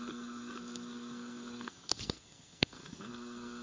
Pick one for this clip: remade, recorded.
remade